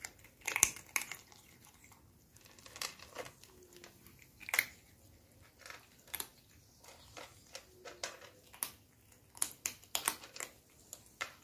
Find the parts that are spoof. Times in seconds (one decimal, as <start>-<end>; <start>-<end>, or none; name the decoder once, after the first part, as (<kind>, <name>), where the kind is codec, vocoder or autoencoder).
none